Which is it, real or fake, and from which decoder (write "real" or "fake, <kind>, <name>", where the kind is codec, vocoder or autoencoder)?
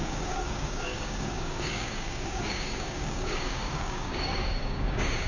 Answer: fake, codec, DAC